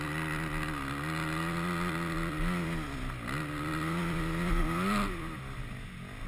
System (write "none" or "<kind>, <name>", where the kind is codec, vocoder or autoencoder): none